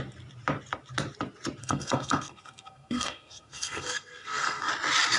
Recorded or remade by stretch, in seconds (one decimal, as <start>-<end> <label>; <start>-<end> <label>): 0.0-1.6 recorded; 1.6-4.7 remade; 4.7-5.2 recorded